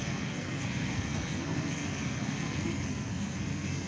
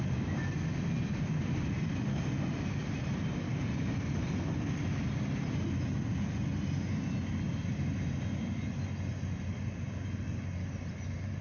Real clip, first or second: second